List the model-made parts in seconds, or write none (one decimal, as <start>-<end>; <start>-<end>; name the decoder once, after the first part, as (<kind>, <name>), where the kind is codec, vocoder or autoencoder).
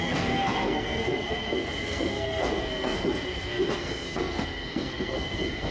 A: 0.0-5.7 (codec, SNAC)